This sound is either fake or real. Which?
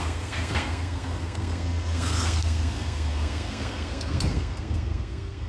fake